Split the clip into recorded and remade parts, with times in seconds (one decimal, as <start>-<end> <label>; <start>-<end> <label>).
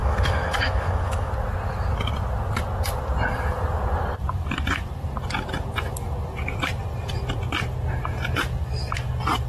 0.0-1.3 remade; 1.3-9.5 recorded